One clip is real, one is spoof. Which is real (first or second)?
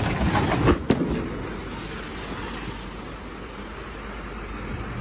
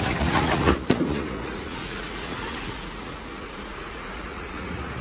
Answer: first